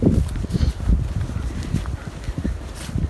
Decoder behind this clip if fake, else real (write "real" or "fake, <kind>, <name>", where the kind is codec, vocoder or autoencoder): real